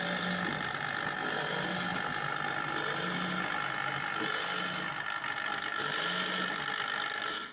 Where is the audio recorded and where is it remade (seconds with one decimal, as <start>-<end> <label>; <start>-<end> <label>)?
0.0-7.5 recorded